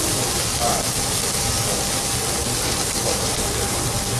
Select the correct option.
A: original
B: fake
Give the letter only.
A